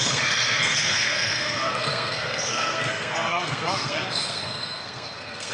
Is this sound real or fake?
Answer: fake